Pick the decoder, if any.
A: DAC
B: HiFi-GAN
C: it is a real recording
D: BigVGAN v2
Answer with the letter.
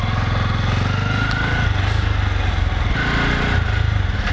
C